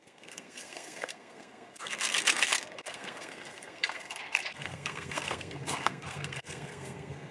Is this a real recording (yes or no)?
no